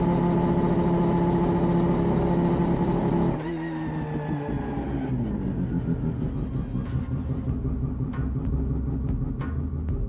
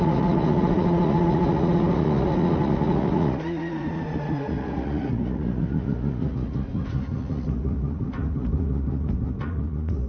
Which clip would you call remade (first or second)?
second